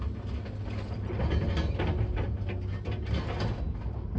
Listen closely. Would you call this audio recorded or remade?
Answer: recorded